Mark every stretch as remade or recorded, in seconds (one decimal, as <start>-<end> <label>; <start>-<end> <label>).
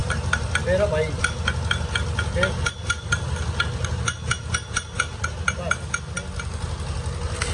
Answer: 0.0-0.5 remade; 0.5-7.5 recorded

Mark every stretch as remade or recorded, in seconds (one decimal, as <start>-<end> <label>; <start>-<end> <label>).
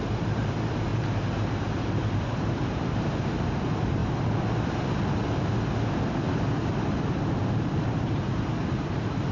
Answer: 0.0-4.0 remade; 4.0-7.3 recorded; 7.3-9.3 remade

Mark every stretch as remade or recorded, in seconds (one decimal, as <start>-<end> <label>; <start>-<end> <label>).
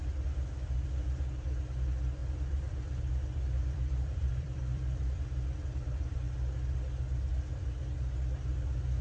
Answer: 0.0-2.2 recorded; 2.2-6.1 remade; 6.1-9.0 recorded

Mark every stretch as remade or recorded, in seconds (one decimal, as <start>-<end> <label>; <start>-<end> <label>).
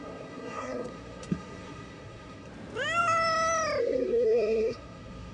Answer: 0.0-2.5 remade; 2.5-3.8 recorded; 3.8-5.3 remade